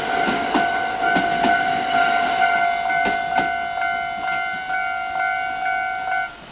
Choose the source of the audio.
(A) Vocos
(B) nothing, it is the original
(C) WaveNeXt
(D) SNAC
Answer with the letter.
B